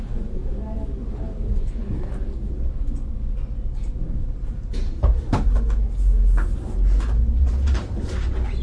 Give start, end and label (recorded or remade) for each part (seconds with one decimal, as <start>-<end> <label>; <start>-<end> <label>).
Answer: 0.0-0.4 remade; 0.4-1.1 recorded; 1.1-1.5 remade; 1.5-4.3 recorded; 4.3-5.3 remade; 5.3-7.4 recorded; 7.4-8.6 remade